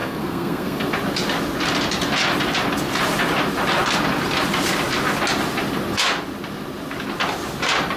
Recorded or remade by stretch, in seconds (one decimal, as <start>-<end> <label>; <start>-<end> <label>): 0.0-0.9 remade; 0.9-8.0 recorded